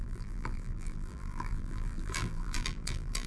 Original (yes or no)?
no